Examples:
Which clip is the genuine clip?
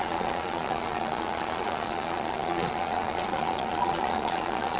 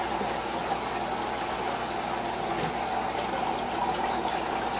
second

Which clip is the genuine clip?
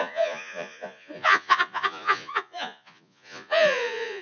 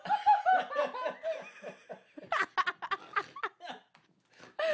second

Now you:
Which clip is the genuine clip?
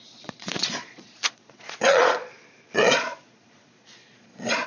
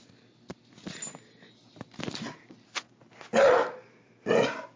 second